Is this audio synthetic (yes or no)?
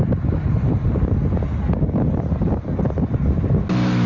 no